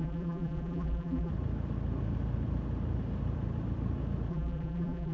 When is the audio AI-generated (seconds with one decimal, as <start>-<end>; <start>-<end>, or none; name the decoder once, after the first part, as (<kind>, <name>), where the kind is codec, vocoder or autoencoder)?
0.0-1.3 (vocoder, BigVGAN v2); 4.3-5.1